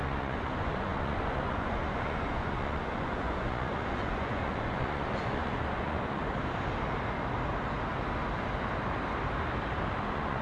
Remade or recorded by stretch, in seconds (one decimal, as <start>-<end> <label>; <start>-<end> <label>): 0.0-6.2 remade; 6.2-10.0 recorded; 10.0-10.4 remade